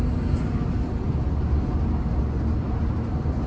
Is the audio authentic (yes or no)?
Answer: yes